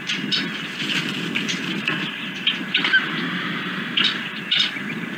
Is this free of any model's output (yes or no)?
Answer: no